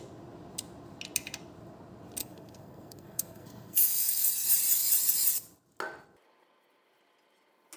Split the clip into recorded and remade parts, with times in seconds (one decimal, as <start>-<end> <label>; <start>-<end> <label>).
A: 0.0-2.2 recorded; 2.2-4.3 remade; 4.3-7.8 recorded